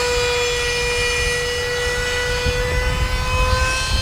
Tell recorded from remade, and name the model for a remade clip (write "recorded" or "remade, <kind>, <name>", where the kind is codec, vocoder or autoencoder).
recorded